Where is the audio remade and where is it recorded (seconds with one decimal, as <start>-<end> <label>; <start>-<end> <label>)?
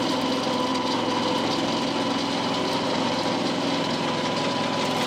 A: 0.0-5.1 recorded